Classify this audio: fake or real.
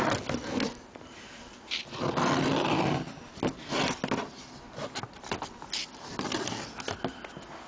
real